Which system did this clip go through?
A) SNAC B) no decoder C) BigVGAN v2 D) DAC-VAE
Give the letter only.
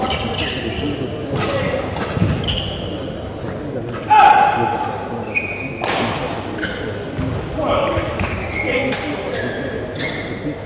B